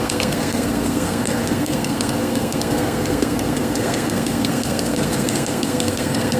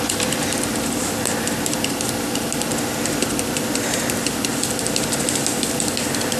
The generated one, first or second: first